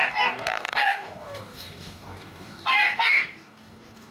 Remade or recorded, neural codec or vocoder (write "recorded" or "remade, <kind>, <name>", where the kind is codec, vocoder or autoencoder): remade, codec, DAC